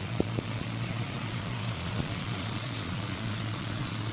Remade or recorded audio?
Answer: remade